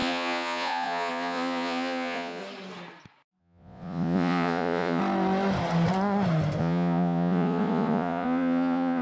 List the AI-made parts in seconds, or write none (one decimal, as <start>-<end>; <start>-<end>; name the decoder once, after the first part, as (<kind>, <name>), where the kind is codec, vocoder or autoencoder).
0.0-2.4 (vocoder, Vocos); 3.4-5.0; 6.6-9.0